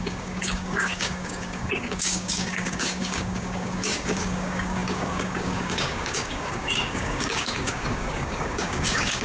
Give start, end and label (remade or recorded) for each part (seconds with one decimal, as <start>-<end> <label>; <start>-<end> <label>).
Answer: 0.0-9.2 remade